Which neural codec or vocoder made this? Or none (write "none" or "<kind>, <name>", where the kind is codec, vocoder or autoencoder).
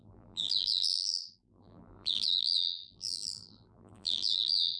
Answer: vocoder, BigVGAN v2